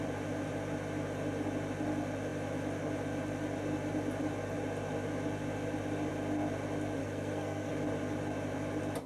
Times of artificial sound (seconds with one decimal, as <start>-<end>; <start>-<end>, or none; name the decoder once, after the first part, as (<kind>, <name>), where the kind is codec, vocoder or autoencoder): 7.0-7.7 (codec, SNAC)

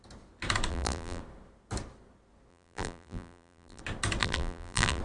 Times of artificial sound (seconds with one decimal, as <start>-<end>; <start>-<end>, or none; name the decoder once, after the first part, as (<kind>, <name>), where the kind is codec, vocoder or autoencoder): 0.7-1.2 (vocoder, BigVGAN v2); 2.5-3.8; 4.2-5.0

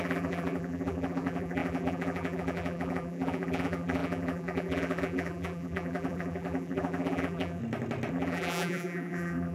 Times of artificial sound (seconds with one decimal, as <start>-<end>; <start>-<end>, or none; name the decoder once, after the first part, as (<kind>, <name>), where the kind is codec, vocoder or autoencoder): 0.0-7.6 (vocoder, BigVGAN v2); 8.1-9.5

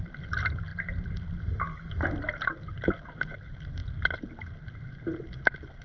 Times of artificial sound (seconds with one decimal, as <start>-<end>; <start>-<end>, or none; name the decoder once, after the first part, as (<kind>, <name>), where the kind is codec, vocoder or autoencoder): none

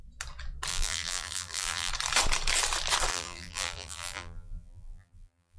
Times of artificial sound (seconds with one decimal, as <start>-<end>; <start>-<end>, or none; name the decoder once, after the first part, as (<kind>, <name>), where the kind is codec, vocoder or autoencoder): 0.7-1.9 (vocoder, BigVGAN v2); 3.1-5.6

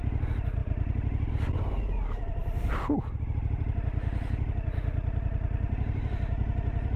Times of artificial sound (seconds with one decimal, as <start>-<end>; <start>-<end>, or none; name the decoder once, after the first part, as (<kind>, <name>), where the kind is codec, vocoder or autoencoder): 0.0-7.0 (vocoder, BigVGAN v2)